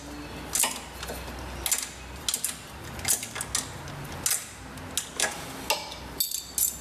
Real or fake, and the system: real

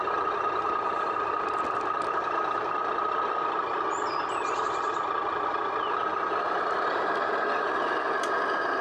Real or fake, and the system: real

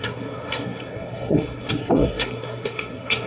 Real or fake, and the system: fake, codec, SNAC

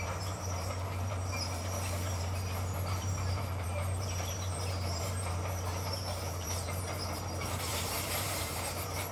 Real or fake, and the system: fake, vocoder, BigVGAN v2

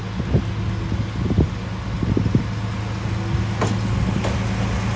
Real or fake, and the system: real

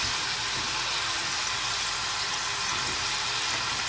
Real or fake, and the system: real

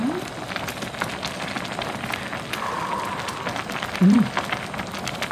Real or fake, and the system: real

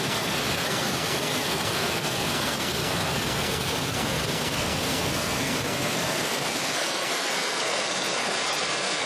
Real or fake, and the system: fake, codec, SNAC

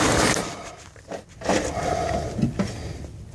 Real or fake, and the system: real